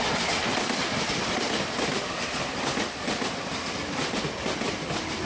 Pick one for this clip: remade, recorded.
recorded